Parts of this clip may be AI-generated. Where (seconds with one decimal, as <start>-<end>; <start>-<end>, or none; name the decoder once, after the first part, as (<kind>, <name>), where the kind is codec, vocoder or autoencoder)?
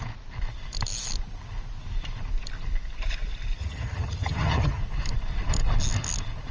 3.6-4.8 (vocoder, HiFi-GAN)